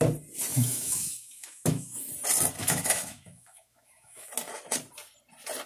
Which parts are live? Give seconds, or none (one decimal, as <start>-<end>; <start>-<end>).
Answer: 0.0-0.5; 2.1-2.6; 4.3-5.7